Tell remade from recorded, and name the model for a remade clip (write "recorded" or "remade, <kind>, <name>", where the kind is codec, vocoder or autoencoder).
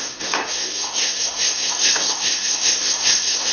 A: remade, codec, SNAC